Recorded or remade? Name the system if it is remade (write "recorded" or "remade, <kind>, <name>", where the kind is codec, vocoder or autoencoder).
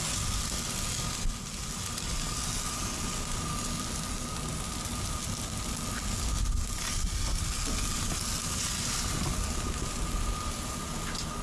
recorded